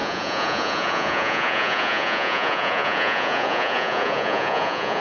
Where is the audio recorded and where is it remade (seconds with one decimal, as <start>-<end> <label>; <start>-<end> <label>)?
0.0-5.0 remade